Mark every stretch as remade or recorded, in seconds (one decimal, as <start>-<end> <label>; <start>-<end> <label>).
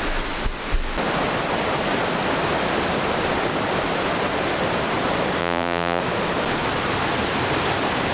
0.0-5.4 recorded; 5.4-6.0 remade; 6.0-8.1 recorded